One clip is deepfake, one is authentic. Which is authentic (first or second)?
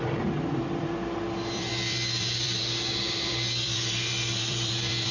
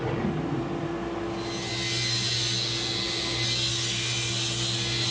second